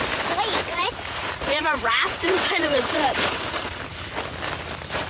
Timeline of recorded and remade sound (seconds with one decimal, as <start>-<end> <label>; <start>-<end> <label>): 0.0-0.7 recorded; 0.7-3.8 remade; 3.8-5.1 recorded